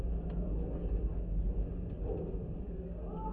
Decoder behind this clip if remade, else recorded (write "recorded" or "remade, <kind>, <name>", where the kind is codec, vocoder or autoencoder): recorded